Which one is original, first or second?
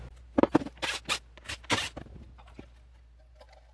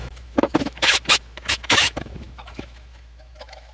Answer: first